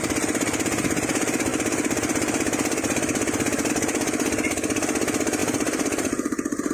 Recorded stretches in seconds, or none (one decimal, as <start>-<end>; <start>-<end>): 0.0-1.5; 3.7-5.4